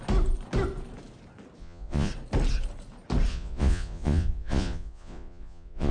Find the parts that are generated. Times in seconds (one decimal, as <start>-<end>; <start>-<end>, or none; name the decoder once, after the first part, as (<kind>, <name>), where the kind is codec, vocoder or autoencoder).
1.6-2.1 (vocoder, Vocos); 3.3-5.9